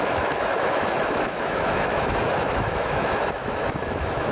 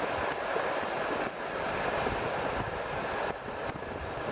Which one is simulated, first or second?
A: first